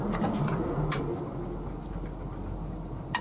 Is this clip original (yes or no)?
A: yes